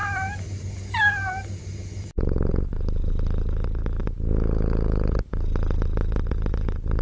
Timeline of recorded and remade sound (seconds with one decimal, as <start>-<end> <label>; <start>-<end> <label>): 0.0-7.0 recorded